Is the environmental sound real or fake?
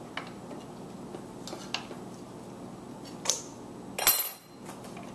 real